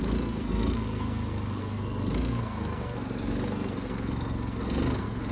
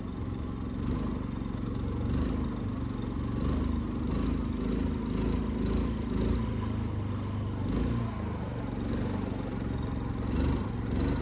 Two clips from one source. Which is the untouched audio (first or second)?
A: second